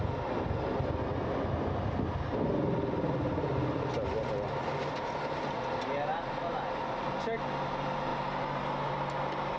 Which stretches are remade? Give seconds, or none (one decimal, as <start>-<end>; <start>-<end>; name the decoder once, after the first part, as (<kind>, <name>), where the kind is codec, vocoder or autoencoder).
none

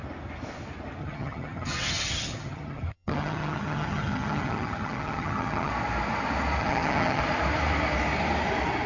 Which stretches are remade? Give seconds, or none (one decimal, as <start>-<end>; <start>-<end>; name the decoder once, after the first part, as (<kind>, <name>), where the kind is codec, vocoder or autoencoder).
1.0-5.7 (vocoder, HiFi-GAN); 6.6-7.2

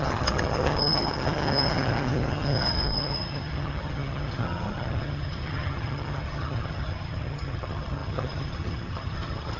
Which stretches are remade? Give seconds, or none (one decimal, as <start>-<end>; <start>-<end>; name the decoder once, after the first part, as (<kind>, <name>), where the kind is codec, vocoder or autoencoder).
0.0-9.6 (vocoder, HiFi-GAN)